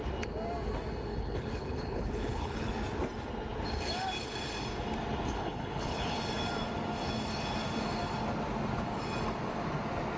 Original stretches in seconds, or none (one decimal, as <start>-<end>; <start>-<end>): 0.0-1.1; 2.7-5.3; 6.2-10.2